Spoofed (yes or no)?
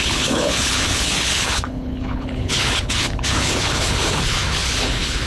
yes